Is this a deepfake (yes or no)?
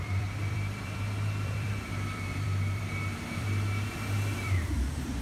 yes